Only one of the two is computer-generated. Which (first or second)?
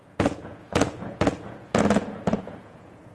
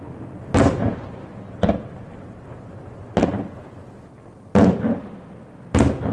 first